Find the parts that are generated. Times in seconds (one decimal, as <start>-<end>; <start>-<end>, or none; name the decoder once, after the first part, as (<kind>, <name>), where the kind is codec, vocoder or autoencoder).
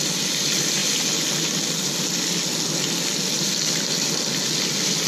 none